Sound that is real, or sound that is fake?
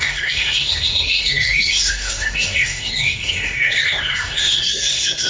fake